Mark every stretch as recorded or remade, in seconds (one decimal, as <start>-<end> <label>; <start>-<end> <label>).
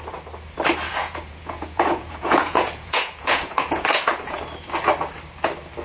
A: 0.0-0.9 recorded; 0.9-4.4 remade; 4.4-5.8 recorded